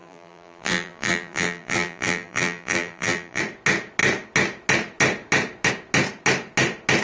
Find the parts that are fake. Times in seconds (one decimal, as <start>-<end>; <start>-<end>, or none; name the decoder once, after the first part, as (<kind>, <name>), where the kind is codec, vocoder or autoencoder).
0.0-3.4 (vocoder, BigVGAN v2)